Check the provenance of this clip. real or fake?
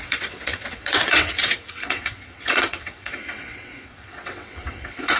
fake